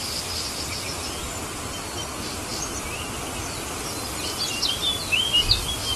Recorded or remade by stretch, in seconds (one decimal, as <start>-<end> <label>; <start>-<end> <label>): 0.0-6.0 recorded